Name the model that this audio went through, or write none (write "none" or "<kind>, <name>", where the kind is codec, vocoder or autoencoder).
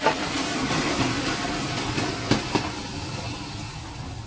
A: none